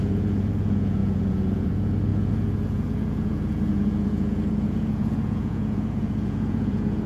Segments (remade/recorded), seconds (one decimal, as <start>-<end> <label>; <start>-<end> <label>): 0.0-7.1 remade